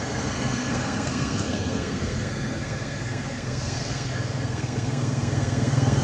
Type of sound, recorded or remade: remade